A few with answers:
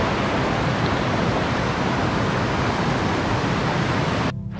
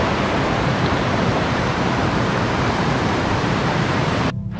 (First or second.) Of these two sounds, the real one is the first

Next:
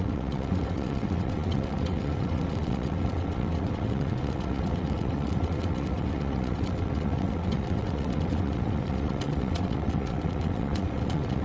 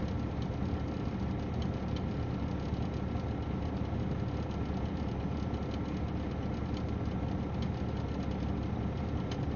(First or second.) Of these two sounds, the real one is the second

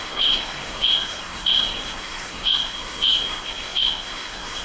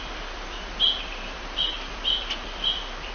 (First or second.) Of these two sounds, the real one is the second